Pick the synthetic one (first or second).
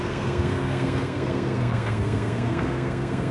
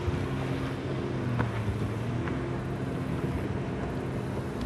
first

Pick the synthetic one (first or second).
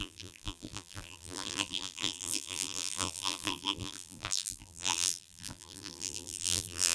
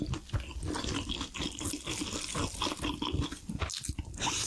first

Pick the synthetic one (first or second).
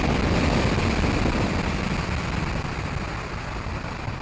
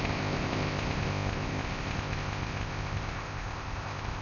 second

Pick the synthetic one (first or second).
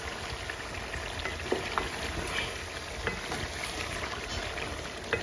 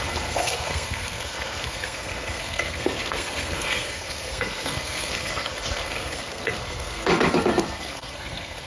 second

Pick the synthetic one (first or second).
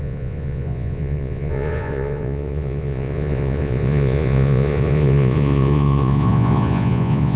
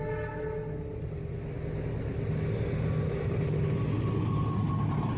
first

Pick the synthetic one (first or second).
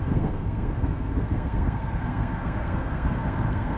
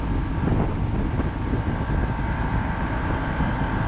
first